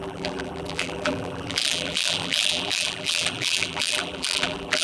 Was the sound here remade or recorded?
remade